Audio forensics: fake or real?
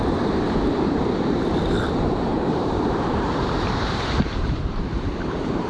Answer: fake